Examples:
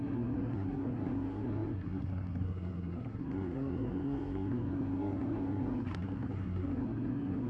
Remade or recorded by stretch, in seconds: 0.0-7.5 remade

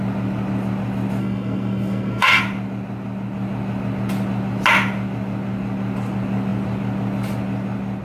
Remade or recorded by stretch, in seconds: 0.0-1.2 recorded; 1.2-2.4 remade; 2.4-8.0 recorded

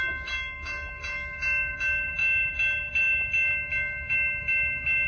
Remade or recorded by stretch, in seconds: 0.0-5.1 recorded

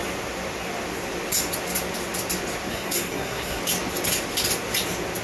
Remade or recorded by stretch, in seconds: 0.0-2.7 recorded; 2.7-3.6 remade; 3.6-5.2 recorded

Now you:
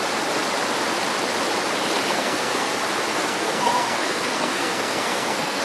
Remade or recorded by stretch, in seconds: 0.0-2.1 recorded; 2.1-2.7 remade; 2.7-3.1 recorded; 3.1-5.6 remade